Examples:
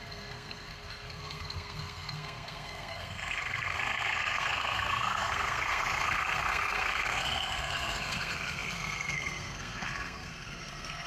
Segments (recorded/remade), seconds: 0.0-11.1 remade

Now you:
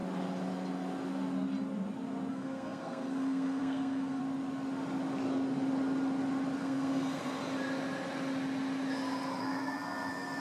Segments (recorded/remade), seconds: 0.0-2.3 recorded; 2.3-4.2 remade; 4.2-6.6 recorded; 6.6-7.4 remade; 7.4-9.4 recorded; 9.4-10.4 remade